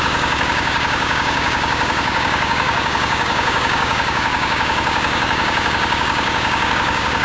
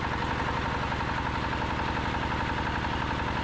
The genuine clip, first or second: second